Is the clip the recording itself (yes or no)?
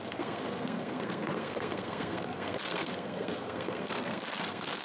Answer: no